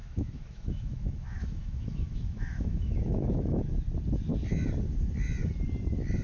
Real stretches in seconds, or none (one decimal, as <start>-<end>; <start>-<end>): 3.7-6.2